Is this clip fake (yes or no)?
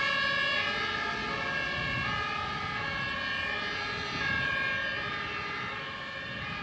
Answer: no